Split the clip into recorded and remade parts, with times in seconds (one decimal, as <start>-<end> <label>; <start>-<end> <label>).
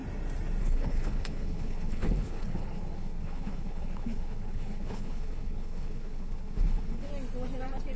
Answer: 0.0-0.6 recorded; 0.6-7.1 remade; 7.1-8.0 recorded